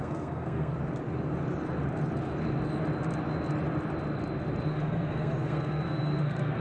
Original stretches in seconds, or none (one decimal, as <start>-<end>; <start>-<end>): 0.7-4.7

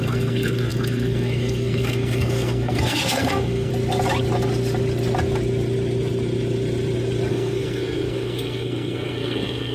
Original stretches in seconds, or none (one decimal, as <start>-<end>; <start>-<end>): 3.7-7.3

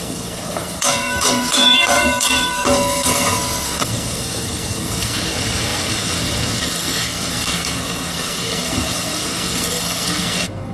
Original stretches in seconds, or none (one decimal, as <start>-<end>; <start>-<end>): none

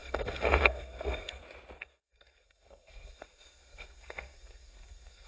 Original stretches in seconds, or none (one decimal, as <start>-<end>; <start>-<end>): 1.4-1.8

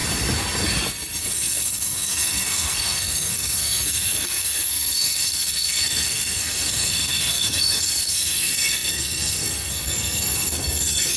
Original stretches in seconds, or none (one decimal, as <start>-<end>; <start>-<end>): 0.0-1.2

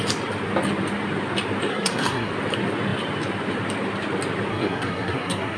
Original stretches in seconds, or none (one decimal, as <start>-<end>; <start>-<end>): 0.0-1.7; 2.3-4.5

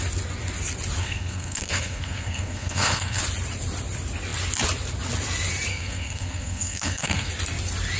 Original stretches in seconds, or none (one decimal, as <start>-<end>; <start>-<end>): 0.0-1.0; 3.2-5.7; 7.3-8.0